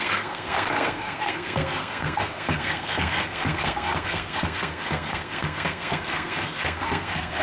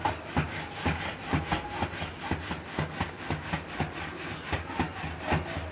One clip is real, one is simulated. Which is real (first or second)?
second